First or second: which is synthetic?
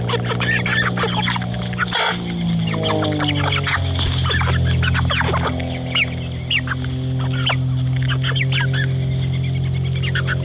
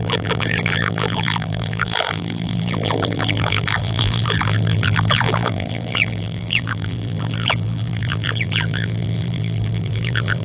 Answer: second